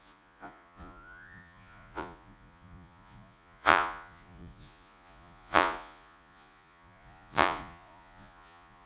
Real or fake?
fake